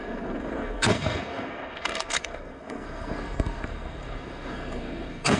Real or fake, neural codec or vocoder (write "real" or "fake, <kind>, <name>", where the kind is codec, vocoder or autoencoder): fake, codec, SNAC